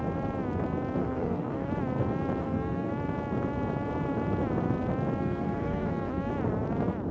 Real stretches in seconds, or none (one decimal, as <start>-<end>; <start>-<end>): 0.0-1.0; 1.7-2.4; 2.9-5.2; 6.3-7.1